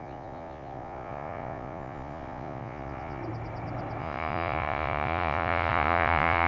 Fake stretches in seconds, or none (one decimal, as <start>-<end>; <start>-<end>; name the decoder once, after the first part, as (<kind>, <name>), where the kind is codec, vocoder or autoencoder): 0.0-3.2 (vocoder, Vocos); 4.0-6.5